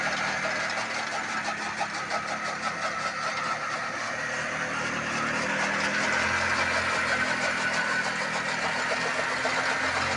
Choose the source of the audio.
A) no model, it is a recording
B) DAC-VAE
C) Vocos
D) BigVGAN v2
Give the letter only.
A